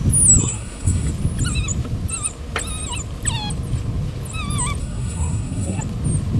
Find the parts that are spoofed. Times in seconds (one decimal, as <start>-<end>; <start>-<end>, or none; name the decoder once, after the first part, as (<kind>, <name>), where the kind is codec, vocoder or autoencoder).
0.4-1.1 (codec, SNAC); 4.8-5.8